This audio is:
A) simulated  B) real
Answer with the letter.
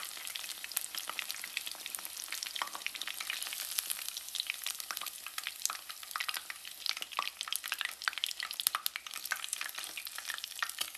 B